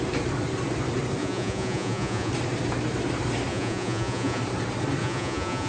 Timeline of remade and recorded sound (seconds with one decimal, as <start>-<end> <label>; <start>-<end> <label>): 0.0-1.2 recorded; 1.2-2.3 remade; 2.3-3.5 recorded; 3.5-4.4 remade; 4.4-5.0 recorded; 5.0-5.7 remade